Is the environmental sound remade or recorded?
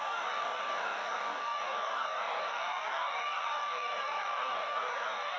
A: remade